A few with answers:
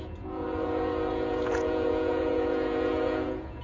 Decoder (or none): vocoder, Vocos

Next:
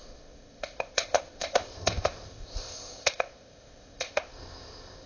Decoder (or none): codec, ZipCodec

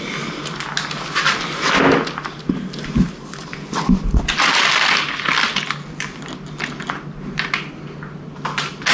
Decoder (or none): none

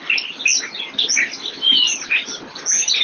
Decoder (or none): none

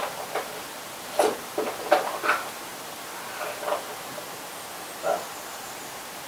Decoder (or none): none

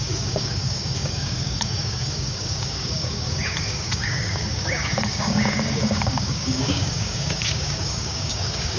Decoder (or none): codec, DAC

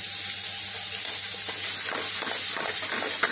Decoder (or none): none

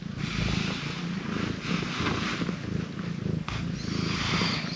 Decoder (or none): none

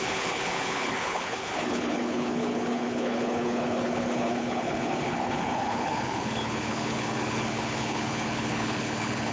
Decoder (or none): codec, HILCodec